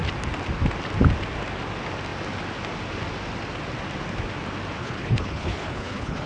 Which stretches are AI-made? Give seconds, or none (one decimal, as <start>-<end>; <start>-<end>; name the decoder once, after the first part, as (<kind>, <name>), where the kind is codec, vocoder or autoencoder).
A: 4.8-6.3 (codec, HILCodec)